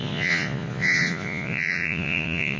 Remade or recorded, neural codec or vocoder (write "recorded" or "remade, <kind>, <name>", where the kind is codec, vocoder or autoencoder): remade, vocoder, Vocos